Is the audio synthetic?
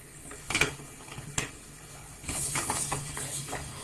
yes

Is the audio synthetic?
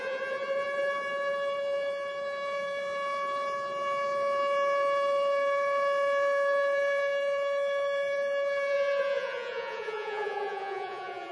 yes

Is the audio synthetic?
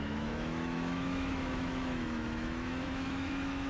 yes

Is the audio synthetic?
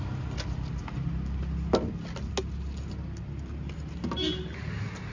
no